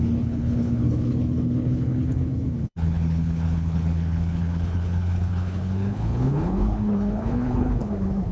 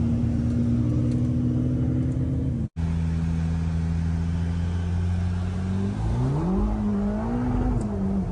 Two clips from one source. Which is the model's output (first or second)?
first